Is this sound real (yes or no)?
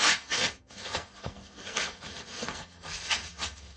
no